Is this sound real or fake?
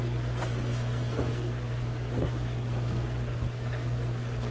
fake